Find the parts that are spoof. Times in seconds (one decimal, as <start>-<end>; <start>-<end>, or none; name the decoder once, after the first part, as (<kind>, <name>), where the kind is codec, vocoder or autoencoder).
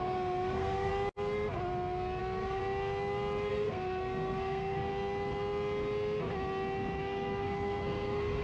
0.0-0.9 (codec, SNAC); 2.2-2.6; 3.5-4.9; 7.0-8.4